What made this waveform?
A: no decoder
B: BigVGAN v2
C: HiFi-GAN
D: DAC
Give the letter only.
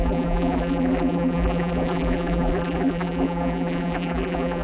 B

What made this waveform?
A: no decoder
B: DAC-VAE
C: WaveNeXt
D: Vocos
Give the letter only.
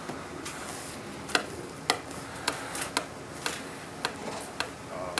A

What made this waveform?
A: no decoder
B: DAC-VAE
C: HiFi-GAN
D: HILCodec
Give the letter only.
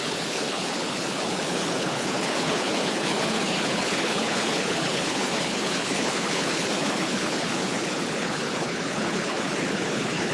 D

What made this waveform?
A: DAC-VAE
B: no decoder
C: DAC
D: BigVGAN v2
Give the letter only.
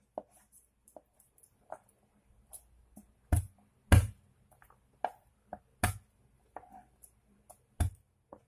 B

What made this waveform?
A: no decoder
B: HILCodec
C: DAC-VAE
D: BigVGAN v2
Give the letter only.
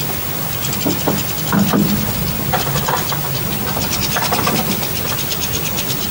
A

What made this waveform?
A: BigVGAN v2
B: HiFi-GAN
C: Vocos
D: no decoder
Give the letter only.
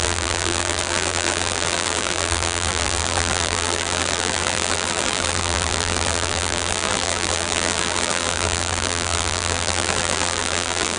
A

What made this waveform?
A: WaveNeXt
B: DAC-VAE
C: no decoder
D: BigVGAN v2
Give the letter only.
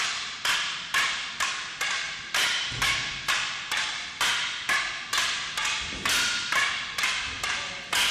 C